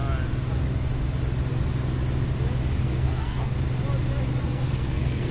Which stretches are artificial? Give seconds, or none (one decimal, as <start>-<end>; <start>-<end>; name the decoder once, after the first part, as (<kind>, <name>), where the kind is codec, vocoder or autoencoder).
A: 2.8-3.5 (codec, SNAC); 4.3-5.3